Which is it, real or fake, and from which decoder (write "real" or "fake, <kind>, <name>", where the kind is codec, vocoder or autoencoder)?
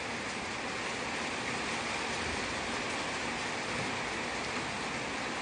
real